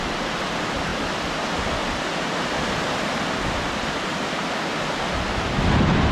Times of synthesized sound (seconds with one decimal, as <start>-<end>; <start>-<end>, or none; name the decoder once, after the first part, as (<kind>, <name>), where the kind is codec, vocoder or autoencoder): none

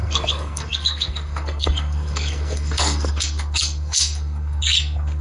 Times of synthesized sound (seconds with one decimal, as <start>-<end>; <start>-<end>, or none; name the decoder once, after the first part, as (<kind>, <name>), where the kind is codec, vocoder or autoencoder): 0.0-5.2 (codec, SNAC)

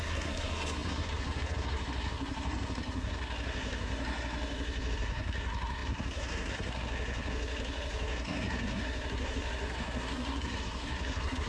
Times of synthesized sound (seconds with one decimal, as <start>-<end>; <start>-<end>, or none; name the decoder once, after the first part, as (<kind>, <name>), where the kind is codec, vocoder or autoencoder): 0.0-11.5 (codec, SNAC)

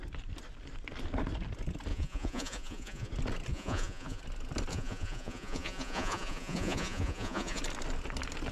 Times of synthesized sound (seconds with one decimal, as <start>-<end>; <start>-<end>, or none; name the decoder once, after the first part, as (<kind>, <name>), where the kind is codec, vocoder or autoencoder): 1.9-3.1 (vocoder, Vocos); 3.5-4.2; 4.7-7.6

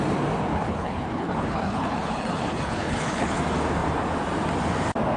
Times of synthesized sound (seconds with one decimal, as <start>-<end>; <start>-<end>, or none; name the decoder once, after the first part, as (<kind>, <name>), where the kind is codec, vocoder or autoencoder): 0.5-3.4 (codec, HILCodec)

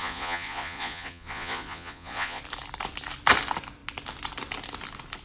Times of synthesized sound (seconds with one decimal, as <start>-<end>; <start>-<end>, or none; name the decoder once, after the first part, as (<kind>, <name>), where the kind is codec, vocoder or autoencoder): 0.0-2.4 (vocoder, Vocos)

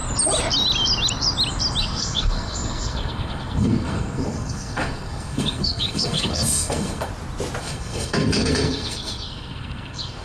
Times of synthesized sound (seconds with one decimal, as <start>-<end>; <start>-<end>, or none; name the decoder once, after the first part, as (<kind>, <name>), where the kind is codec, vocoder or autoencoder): 1.8-7.1 (codec, SNAC); 7.6-10.2